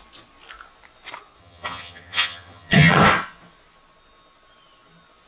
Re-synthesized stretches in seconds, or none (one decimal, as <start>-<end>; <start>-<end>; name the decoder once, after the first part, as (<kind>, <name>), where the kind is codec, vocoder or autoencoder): 1.4-3.0 (vocoder, HiFi-GAN)